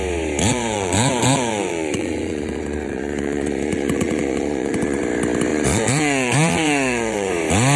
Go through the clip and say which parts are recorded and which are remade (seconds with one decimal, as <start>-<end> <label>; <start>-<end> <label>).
0.0-0.5 recorded; 0.5-5.0 remade; 5.0-5.5 recorded; 5.5-7.3 remade; 7.3-7.8 recorded